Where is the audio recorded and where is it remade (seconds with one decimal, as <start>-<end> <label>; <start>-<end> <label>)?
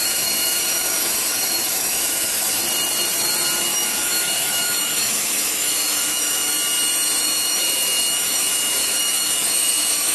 0.0-2.6 remade; 2.6-3.6 recorded; 3.6-6.5 remade; 6.5-7.2 recorded; 7.2-10.1 remade